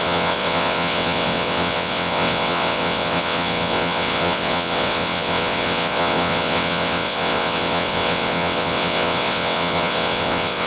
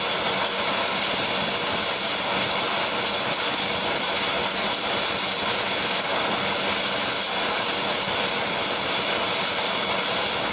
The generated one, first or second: first